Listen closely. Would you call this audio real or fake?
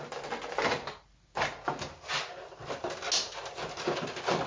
real